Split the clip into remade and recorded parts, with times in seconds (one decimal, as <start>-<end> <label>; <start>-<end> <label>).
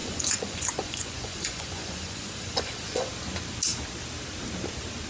0.0-3.1 remade; 3.1-5.1 recorded